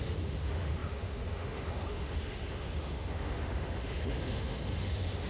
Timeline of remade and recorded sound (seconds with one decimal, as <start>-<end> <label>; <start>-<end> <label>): 0.0-5.3 remade